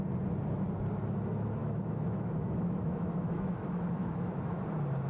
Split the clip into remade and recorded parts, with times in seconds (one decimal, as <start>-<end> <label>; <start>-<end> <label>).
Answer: 0.0-1.6 recorded; 1.6-4.6 remade; 4.6-5.1 recorded